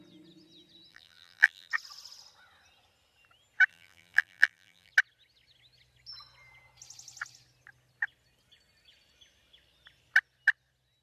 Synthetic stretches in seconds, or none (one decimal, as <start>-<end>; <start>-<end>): 0.9-1.7; 3.7-4.9